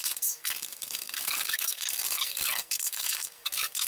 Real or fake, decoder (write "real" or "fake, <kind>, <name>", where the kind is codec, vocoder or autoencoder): fake, codec, SNAC